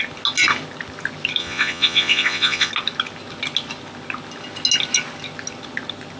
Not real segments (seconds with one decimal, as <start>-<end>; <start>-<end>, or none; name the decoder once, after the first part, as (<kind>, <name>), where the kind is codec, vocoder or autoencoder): 1.4-2.7 (vocoder, Vocos)